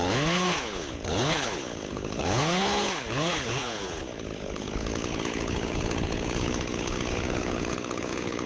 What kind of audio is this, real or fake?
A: fake